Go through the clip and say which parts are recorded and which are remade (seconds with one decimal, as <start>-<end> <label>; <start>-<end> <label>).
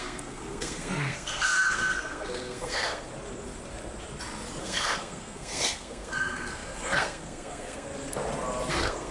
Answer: 0.0-3.1 remade; 3.1-4.6 recorded; 4.6-7.9 remade; 7.9-8.7 recorded; 8.7-9.1 remade